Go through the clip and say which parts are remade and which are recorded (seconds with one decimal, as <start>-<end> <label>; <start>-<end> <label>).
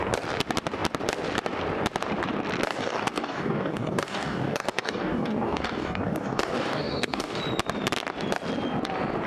0.0-2.7 recorded; 2.7-7.4 remade; 7.4-9.3 recorded